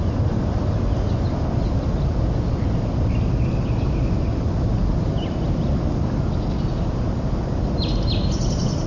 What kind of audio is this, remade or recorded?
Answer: recorded